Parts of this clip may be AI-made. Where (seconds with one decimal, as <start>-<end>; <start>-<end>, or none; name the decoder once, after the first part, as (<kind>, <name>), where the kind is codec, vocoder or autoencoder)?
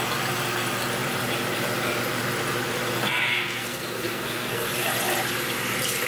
3.0-4.7 (codec, SNAC)